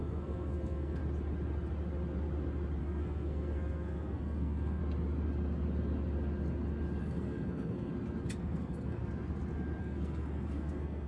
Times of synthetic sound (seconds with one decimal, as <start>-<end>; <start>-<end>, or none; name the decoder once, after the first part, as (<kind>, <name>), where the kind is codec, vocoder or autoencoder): 0.0-1.0 (codec, SNAC); 2.8-4.8; 7.0-7.9; 8.4-9.0; 9.8-11.1